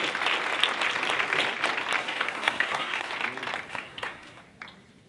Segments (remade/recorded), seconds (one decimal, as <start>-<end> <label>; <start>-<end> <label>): 0.0-2.0 recorded; 2.0-3.1 remade; 3.1-3.7 recorded; 3.7-4.4 remade; 4.4-5.1 recorded